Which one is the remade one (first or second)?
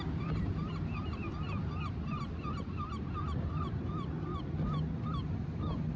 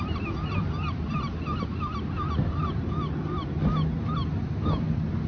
first